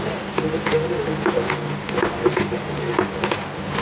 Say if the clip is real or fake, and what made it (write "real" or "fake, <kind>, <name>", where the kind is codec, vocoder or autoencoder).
real